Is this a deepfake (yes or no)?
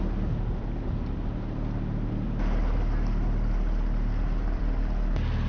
no